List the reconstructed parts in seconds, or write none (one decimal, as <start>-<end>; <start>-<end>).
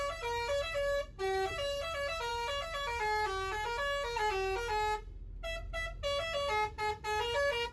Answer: none